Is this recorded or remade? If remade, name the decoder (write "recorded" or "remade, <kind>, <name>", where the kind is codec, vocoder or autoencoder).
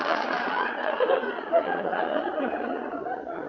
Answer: remade, vocoder, Vocos